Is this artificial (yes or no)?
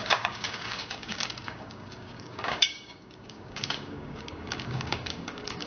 yes